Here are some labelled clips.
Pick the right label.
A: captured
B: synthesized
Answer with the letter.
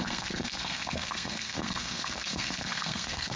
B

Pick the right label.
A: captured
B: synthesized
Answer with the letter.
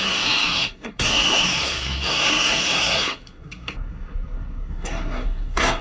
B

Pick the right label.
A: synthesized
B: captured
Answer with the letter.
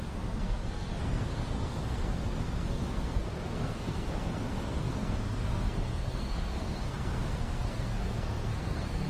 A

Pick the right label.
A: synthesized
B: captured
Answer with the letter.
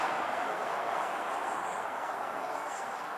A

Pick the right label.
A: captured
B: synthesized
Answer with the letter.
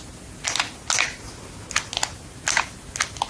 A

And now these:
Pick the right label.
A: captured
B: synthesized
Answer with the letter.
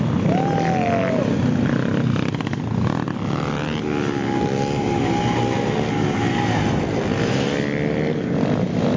A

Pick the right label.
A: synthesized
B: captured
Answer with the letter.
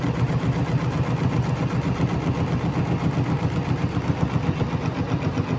B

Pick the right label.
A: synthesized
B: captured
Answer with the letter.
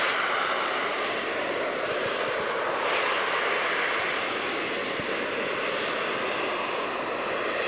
B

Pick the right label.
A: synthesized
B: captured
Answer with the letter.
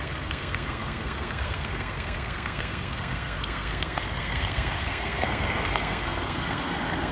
A